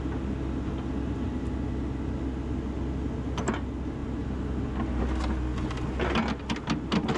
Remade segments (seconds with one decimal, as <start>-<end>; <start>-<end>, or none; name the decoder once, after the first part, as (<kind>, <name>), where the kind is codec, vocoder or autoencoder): none